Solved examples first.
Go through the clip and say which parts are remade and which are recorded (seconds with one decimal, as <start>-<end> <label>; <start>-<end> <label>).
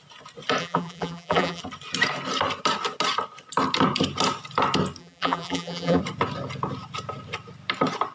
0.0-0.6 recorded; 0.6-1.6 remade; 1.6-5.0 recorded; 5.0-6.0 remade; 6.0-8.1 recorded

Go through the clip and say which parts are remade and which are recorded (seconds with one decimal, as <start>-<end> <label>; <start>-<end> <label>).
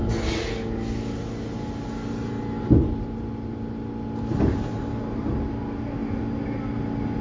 0.0-7.2 recorded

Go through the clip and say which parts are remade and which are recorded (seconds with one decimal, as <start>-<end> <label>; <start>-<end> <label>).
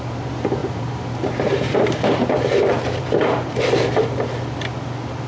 0.0-0.6 recorded; 0.6-3.8 remade; 3.8-5.3 recorded